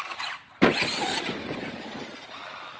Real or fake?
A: fake